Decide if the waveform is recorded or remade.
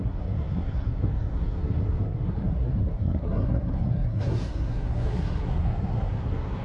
remade